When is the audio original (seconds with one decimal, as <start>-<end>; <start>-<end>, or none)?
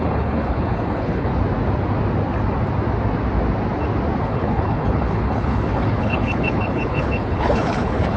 1.3-4.2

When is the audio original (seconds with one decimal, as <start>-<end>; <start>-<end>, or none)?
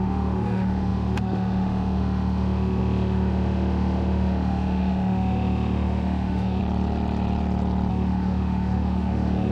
6.6-7.9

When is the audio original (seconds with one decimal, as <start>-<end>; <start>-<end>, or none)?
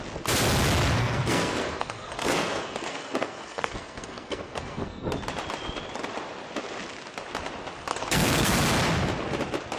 0.0-1.0; 5.1-7.9; 8.6-9.8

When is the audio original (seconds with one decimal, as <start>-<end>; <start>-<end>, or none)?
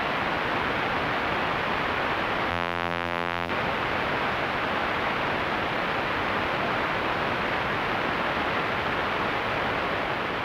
0.0-2.5; 3.5-10.4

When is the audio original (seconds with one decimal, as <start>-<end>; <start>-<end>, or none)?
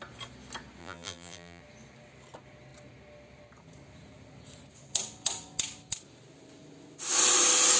0.0-0.8; 1.6-7.8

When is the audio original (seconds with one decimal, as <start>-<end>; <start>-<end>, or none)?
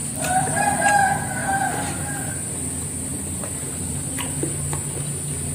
0.9-1.4; 2.5-3.1; 4.0-5.5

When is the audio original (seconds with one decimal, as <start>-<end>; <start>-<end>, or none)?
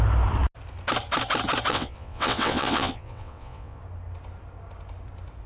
0.0-1.7; 3.8-5.5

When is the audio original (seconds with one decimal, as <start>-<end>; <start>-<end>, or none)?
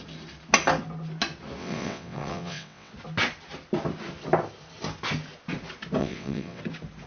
0.0-1.6; 2.9-6.0; 6.6-7.1